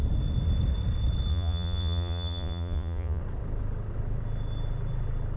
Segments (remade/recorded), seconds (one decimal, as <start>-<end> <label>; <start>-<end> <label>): 0.0-1.3 recorded; 1.3-3.2 remade; 3.2-5.4 recorded